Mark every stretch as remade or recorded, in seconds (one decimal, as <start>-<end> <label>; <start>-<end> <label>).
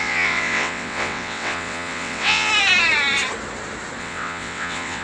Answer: 0.0-2.5 remade; 2.5-4.0 recorded; 4.0-5.0 remade